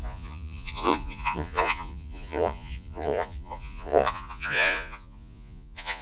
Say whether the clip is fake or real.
fake